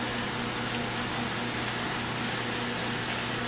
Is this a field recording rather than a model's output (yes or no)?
yes